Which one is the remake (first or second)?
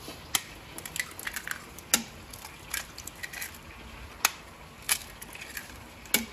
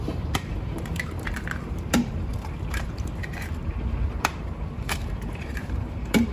second